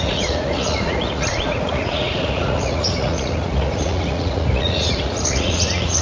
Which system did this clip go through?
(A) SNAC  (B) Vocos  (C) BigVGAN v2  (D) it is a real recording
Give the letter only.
B